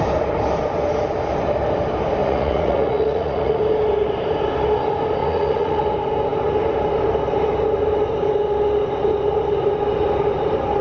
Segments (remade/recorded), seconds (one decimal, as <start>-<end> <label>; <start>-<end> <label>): 0.0-2.2 recorded; 2.2-3.6 remade; 3.6-5.2 recorded; 5.2-5.8 remade; 5.8-10.8 recorded